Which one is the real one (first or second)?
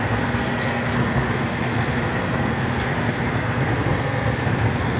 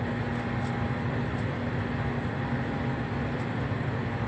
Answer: second